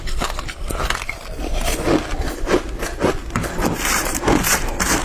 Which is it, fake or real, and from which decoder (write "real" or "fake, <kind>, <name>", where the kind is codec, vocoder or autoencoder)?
fake, vocoder, BigVGAN v2